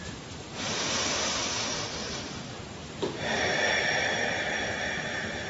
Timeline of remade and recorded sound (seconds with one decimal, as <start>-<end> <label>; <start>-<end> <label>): 0.0-5.5 recorded